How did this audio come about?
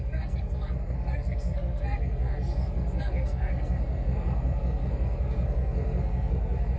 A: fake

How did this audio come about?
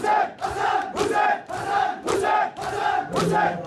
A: real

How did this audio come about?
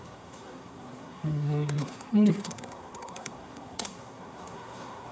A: fake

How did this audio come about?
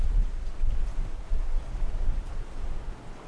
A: real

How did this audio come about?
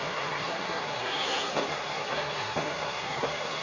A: fake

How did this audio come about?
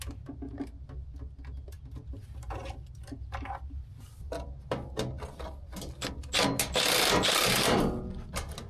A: real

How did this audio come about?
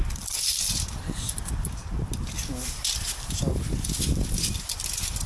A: real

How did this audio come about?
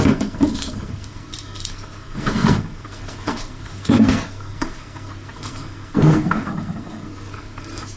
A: fake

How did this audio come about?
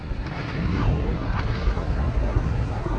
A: fake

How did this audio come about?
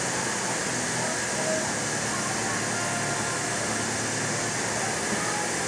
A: real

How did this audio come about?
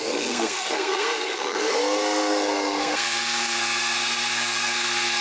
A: fake